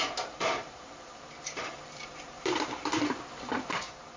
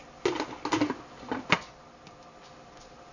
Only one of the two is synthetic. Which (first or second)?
first